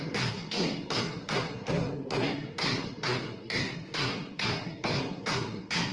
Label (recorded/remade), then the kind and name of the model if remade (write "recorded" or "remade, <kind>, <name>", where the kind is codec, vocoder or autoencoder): remade, codec, SNAC